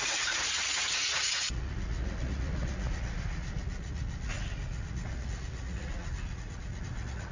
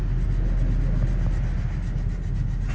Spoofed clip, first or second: first